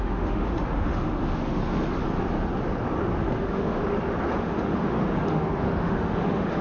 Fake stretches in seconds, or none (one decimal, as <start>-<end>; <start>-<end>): 0.0-1.6; 3.2-3.8; 4.4-6.6